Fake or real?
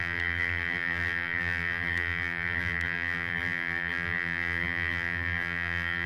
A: fake